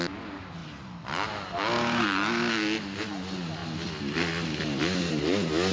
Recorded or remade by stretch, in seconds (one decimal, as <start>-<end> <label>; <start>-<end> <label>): 0.0-5.7 recorded